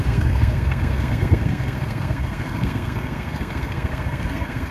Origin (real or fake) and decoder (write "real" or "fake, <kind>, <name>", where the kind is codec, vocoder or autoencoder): fake, codec, SNAC